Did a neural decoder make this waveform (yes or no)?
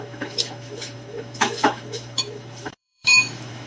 yes